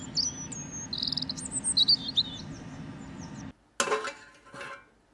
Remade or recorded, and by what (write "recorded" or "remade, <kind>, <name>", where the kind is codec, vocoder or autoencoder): recorded